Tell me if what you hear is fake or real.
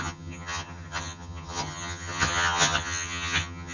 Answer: fake